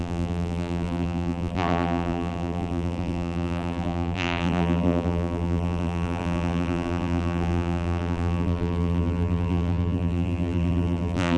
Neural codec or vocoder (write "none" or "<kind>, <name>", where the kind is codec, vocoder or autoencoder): vocoder, BigVGAN v2